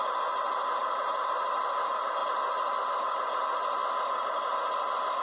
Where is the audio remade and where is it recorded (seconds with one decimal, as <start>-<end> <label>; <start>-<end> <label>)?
0.0-0.8 recorded; 0.8-1.6 remade; 1.6-5.2 recorded